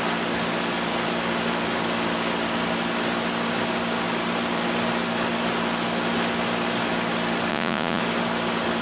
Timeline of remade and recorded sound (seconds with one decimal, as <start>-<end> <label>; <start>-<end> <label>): 0.0-7.5 recorded; 7.5-8.0 remade; 8.0-8.8 recorded